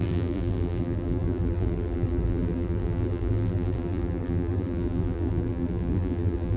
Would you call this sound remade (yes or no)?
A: yes